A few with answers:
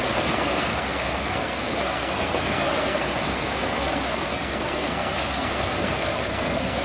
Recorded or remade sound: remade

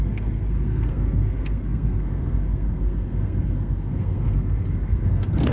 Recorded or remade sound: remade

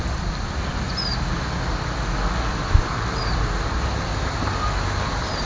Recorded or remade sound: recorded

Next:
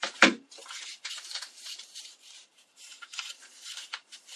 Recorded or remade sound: remade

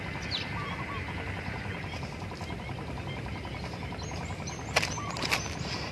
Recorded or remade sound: recorded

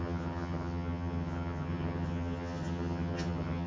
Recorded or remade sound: remade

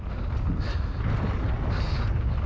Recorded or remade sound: recorded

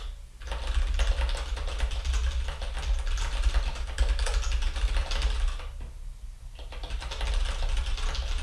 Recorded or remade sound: recorded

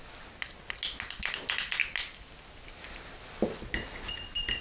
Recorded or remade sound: recorded